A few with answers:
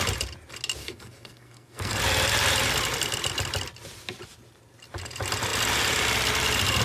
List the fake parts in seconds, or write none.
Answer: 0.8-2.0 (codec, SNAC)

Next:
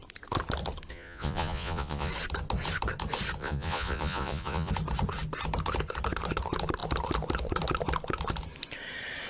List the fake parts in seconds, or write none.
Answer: 0.9-2.1 (vocoder, Vocos); 3.4-4.7

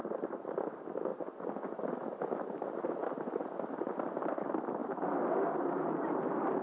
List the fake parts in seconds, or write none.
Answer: 0.0-1.1 (vocoder, BigVGAN v2); 1.8-6.6

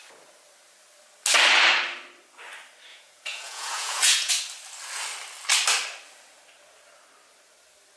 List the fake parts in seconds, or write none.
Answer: 2.9-4.3 (vocoder, Vocos)